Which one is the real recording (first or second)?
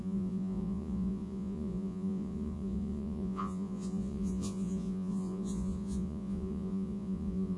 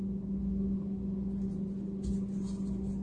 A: second